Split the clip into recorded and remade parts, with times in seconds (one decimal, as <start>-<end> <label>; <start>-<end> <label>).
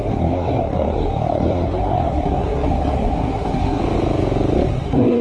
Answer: 0.0-3.8 remade; 3.8-4.7 recorded; 4.7-5.2 remade